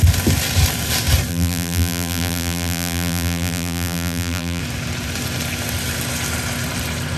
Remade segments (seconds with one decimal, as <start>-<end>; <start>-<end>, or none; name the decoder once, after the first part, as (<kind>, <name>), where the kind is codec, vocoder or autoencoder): 1.3-4.6 (vocoder, BigVGAN v2)